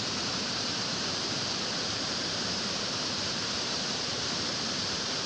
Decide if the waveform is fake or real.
fake